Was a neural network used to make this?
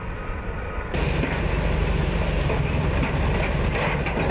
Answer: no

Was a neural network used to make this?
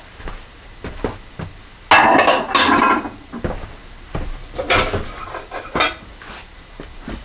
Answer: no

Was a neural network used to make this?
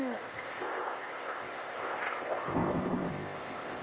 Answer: yes